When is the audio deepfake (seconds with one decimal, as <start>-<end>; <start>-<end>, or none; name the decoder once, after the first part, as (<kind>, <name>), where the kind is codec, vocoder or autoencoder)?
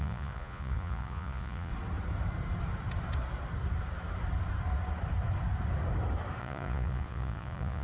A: 0.0-1.7 (vocoder, Vocos); 6.4-7.8